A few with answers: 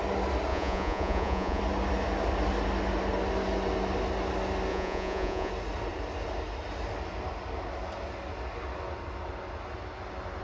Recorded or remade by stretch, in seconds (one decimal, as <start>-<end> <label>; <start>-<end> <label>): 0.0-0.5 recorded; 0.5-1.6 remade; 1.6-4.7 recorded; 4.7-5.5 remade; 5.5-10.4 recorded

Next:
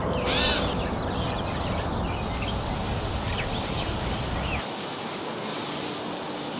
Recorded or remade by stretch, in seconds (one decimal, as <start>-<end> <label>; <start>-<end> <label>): 0.0-6.6 recorded

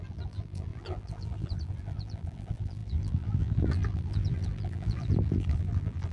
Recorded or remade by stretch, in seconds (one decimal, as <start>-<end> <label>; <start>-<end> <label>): 0.0-6.1 remade